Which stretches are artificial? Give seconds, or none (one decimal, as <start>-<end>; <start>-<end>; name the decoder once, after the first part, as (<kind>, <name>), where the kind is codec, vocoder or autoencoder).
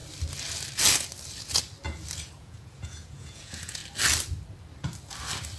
2.4-3.8 (vocoder, Vocos)